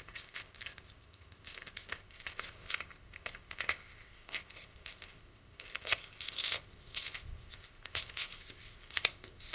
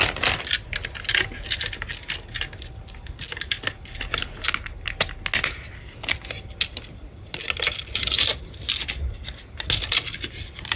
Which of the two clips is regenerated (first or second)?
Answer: first